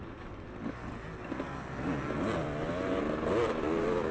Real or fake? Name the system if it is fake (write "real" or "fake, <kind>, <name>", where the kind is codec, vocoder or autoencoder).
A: real